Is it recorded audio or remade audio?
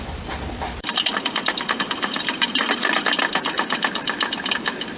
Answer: remade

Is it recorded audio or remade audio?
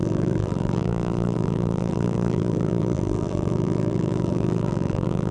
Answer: remade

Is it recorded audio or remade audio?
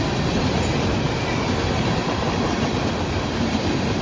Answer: recorded